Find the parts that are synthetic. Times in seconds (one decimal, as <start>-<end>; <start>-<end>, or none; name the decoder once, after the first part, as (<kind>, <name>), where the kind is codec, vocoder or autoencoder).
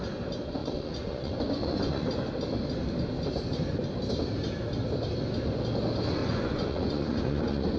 0.6-2.1 (vocoder, Vocos); 6.2-7.8